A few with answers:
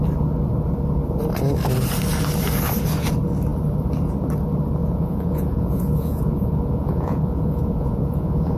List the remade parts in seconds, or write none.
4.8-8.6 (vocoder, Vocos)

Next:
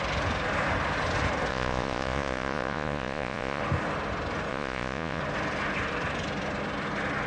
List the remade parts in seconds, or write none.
1.5-3.6 (vocoder, Vocos); 4.5-5.2